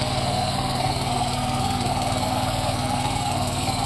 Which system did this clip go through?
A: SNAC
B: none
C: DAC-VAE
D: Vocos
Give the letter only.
A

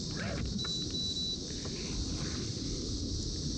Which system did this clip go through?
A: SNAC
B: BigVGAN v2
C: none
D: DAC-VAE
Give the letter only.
C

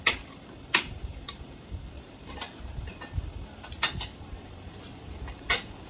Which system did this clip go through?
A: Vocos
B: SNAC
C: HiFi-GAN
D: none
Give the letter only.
D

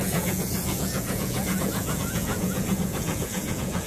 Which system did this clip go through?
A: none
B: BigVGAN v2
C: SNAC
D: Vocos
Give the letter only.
D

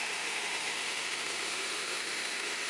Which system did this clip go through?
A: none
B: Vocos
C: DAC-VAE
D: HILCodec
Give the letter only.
C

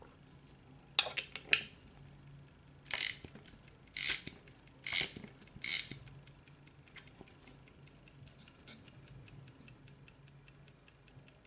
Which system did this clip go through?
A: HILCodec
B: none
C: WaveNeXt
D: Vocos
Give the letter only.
B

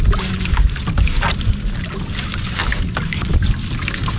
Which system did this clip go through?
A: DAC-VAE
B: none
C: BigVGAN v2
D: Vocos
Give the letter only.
B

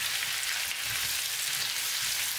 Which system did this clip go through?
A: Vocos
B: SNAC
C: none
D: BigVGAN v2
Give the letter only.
C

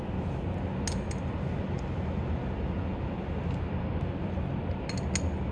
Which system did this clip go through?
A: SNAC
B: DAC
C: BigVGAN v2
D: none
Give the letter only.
D